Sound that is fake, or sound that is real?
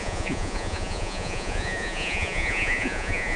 fake